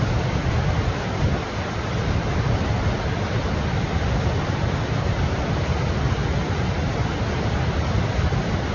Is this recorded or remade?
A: recorded